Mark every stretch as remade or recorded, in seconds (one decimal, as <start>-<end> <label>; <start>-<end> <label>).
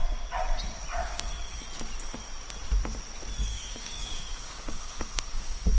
0.0-1.0 recorded; 1.0-1.6 remade; 1.6-3.5 recorded; 3.5-5.8 remade